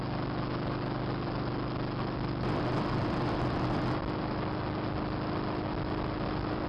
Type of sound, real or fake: real